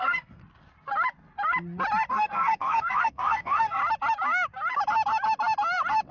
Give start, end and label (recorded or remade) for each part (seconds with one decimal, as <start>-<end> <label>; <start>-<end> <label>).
0.0-0.4 remade; 0.4-2.1 recorded; 2.1-3.8 remade; 3.8-6.1 recorded